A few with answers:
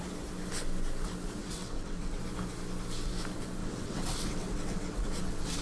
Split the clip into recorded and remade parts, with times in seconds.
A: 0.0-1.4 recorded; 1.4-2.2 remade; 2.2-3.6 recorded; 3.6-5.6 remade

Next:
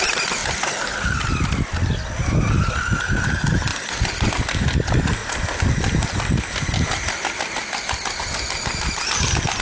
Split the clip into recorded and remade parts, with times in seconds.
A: 0.0-3.7 recorded; 3.7-4.3 remade; 4.3-5.2 recorded; 5.2-8.2 remade; 8.2-9.6 recorded

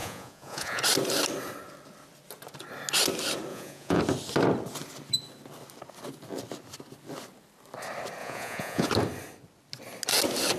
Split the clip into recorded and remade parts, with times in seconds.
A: 0.0-0.8 remade; 0.8-3.5 recorded; 3.5-4.0 remade; 4.0-8.2 recorded; 8.2-8.9 remade; 8.9-10.6 recorded

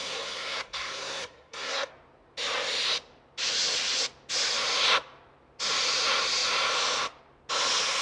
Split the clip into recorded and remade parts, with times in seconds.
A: 0.0-1.9 remade; 1.9-8.0 recorded

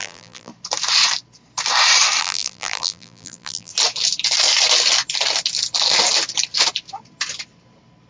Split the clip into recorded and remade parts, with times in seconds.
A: 0.0-0.5 remade; 0.5-2.2 recorded; 2.2-3.7 remade; 3.7-8.1 recorded

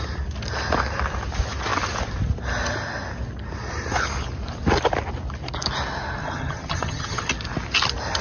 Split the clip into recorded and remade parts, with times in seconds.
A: 0.0-6.2 recorded; 6.2-7.3 remade; 7.3-8.2 recorded

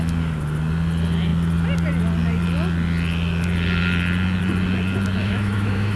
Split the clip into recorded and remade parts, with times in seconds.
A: 0.0-5.2 recorded; 5.2-6.0 remade